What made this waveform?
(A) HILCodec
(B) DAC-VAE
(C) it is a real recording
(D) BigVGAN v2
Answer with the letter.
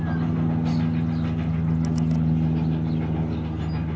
C